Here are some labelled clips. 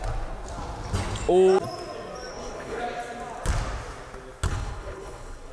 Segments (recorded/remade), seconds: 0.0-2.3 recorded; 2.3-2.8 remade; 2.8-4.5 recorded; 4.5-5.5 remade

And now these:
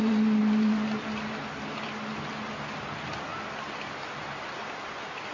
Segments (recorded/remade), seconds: 0.0-5.3 recorded

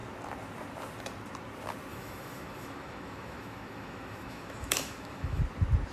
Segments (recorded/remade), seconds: 0.0-1.9 recorded; 1.9-5.4 remade; 5.4-5.9 recorded

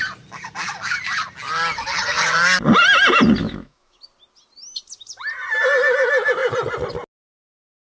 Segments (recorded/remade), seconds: 0.0-3.4 recorded; 3.4-4.0 remade; 4.0-7.9 recorded